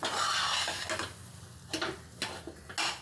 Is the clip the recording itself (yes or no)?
yes